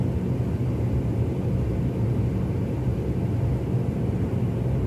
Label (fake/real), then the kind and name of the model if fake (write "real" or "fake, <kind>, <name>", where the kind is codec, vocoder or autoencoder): real